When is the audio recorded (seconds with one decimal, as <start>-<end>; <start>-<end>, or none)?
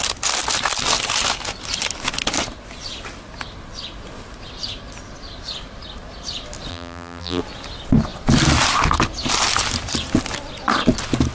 0.0-6.7; 7.4-11.3